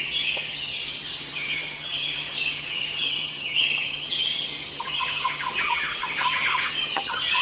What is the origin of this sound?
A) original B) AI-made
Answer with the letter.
B